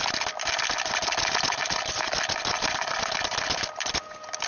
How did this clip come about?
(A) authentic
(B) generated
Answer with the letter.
A